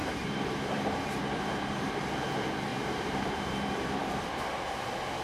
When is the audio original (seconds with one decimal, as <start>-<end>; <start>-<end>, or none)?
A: 2.1-2.7; 4.2-5.2